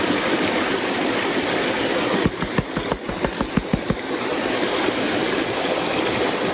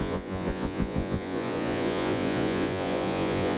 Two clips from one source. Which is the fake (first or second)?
second